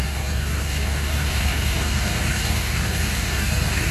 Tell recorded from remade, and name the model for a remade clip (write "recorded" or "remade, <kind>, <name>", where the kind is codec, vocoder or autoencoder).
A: remade, codec, DAC